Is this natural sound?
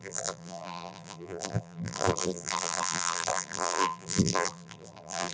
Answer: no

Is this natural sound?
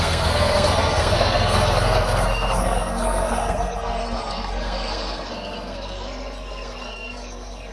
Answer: no